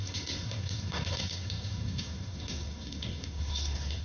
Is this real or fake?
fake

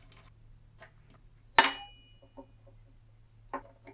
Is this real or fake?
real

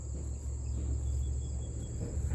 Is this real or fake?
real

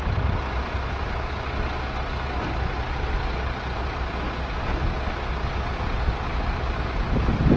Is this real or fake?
real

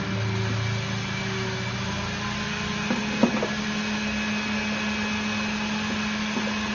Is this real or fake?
real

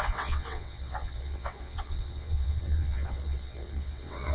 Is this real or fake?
fake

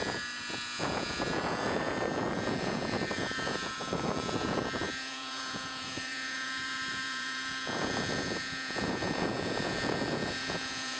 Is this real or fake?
fake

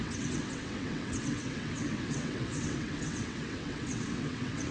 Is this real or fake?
fake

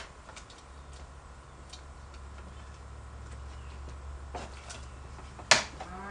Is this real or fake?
real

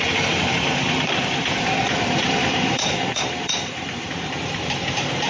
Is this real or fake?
fake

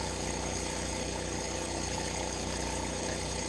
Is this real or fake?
fake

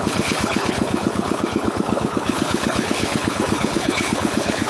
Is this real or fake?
fake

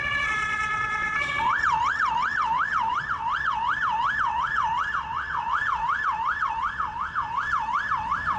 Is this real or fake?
fake